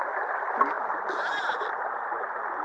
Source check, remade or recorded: recorded